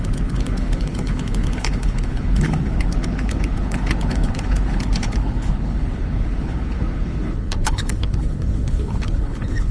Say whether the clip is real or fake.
fake